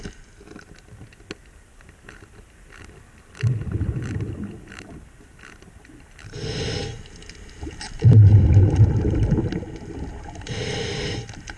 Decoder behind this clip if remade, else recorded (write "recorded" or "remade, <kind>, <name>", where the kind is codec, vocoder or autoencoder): recorded